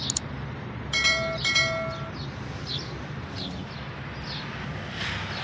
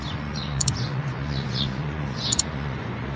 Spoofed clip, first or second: second